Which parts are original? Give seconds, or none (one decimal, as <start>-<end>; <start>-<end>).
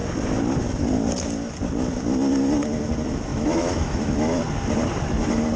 0.0-3.3; 4.4-5.6